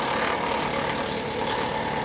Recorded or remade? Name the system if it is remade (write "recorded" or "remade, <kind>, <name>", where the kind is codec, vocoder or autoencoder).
recorded